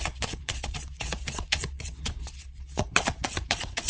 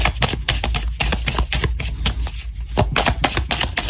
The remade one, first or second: first